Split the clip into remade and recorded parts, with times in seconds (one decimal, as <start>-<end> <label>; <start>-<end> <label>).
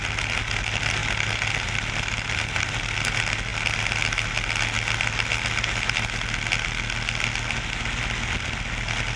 0.0-9.2 recorded